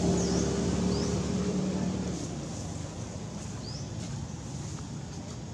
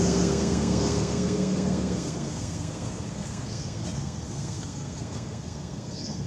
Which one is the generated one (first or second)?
second